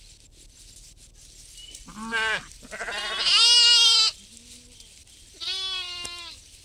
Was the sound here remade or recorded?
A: recorded